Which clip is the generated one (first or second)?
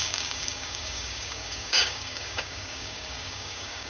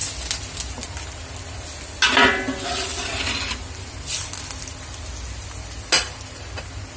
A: first